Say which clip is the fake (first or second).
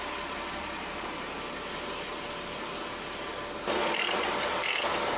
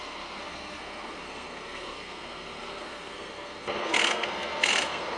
second